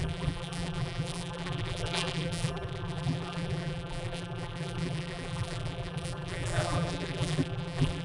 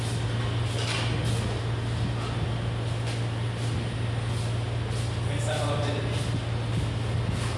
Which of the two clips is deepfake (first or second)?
first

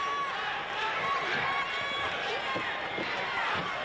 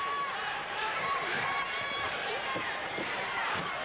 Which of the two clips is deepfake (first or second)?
second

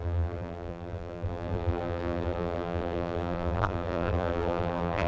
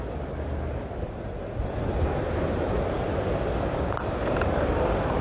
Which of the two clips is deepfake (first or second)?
first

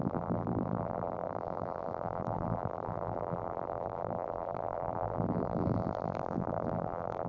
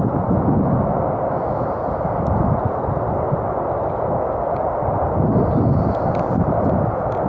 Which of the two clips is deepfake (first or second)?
first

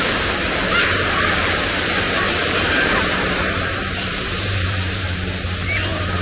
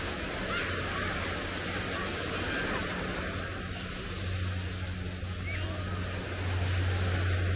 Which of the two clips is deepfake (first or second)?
first